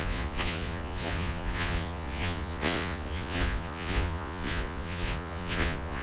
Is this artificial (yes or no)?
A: yes